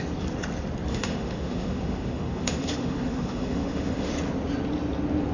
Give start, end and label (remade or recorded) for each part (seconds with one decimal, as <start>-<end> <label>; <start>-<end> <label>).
0.0-0.9 recorded; 0.9-4.1 remade; 4.1-5.3 recorded